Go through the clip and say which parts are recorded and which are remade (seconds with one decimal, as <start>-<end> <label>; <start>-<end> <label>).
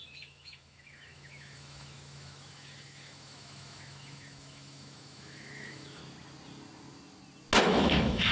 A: 0.0-6.0 remade; 6.0-7.6 recorded; 7.6-8.3 remade